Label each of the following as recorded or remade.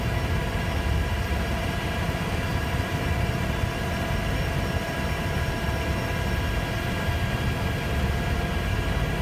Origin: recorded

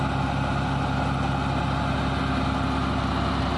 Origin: recorded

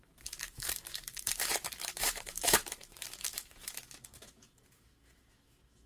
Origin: remade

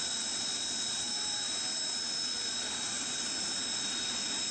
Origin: recorded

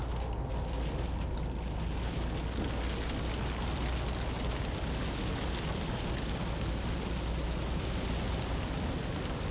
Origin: recorded